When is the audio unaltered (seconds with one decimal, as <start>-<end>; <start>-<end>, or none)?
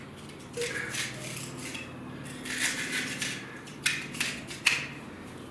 0.0-5.5